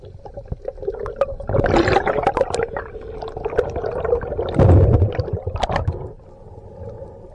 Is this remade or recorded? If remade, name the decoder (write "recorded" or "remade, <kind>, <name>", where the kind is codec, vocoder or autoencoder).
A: recorded